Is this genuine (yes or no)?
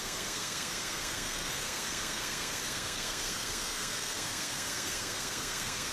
no